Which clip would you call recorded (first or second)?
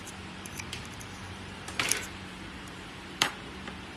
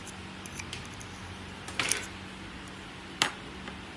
second